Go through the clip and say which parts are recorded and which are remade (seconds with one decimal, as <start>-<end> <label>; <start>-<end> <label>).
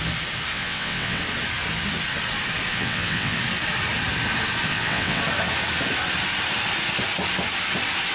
0.0-0.5 recorded; 0.5-1.2 remade; 1.2-2.7 recorded; 2.7-3.4 remade; 3.4-4.7 recorded; 4.7-5.2 remade; 5.2-8.1 recorded